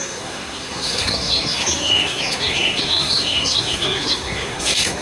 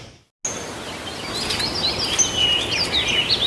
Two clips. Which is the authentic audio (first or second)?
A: second